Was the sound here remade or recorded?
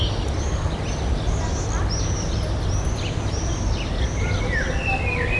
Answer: recorded